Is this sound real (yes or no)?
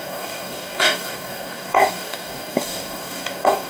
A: no